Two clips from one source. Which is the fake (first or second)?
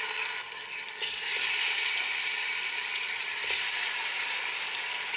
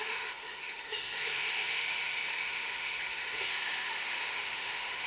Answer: second